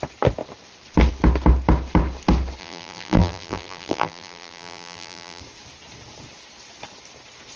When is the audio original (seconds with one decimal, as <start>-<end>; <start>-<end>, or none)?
0.0-2.6; 5.4-7.6